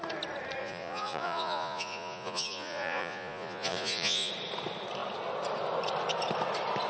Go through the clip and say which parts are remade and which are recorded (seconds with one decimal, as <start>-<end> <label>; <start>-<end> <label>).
0.0-0.6 recorded; 0.6-4.3 remade; 4.3-6.9 recorded